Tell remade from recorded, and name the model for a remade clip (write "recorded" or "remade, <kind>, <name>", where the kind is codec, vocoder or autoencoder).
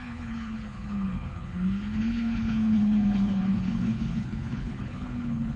remade, codec, HILCodec